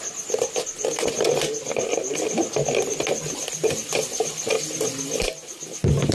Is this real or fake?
real